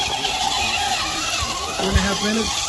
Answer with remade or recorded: recorded